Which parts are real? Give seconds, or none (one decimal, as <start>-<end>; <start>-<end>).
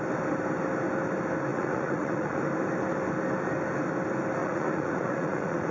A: 0.0-1.5; 2.4-4.4